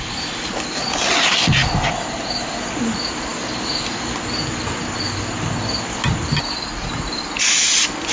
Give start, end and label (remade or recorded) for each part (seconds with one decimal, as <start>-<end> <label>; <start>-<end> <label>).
0.0-8.1 recorded